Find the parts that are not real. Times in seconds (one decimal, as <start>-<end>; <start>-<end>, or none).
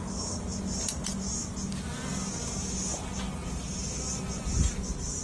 none